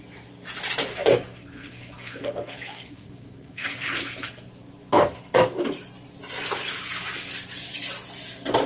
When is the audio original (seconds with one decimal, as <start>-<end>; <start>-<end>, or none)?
0.0-0.9; 4.5-8.7

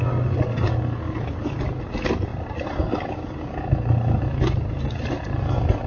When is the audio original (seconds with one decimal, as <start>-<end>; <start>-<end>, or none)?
0.0-5.9

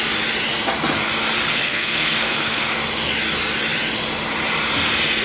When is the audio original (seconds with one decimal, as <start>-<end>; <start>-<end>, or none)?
0.0-1.5; 2.7-5.2

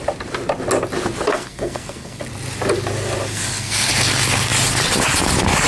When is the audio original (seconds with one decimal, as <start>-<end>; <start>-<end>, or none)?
0.0-1.3; 2.2-3.3; 3.9-5.7